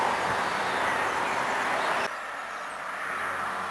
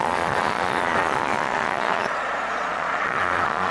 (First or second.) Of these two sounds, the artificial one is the second